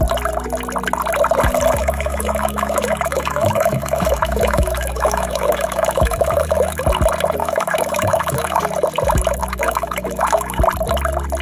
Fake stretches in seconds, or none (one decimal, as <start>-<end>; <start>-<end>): 1.8-6.8; 7.4-8.6; 9.4-10.6